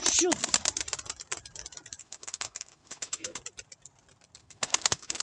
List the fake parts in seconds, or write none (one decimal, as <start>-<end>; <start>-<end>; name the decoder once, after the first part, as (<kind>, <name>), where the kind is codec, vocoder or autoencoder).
2.0-3.4 (autoencoder, DAC-VAE); 4.4-5.2

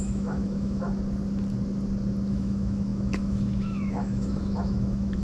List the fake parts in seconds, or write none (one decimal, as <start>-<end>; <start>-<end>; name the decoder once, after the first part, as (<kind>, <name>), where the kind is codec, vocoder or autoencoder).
0.0-0.9 (autoencoder, DAC-VAE); 2.3-5.2

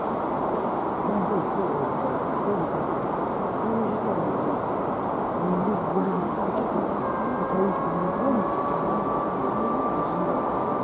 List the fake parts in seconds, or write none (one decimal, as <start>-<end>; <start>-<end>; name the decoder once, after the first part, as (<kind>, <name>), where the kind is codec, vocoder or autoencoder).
5.9-6.5 (autoencoder, DAC-VAE)

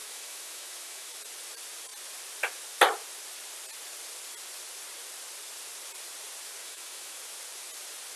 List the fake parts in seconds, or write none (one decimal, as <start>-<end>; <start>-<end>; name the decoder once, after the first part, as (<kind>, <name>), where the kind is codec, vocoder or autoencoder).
0.0-1.2 (autoencoder, DAC-VAE); 6.6-7.2

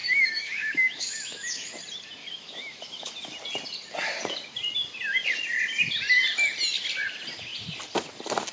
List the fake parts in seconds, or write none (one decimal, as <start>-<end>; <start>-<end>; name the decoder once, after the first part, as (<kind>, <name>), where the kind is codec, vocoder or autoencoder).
0.0-1.7 (autoencoder, DAC-VAE); 2.2-3.1

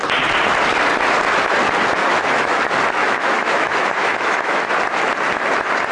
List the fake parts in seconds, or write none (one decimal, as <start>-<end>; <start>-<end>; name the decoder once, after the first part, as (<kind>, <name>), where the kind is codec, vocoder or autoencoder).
2.0-2.6 (autoencoder, DAC-VAE); 3.0-4.7

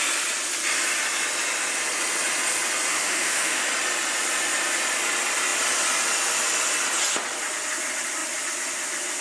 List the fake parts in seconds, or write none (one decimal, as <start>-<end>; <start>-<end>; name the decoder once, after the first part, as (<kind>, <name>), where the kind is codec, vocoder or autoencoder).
2.9-3.6 (autoencoder, DAC-VAE)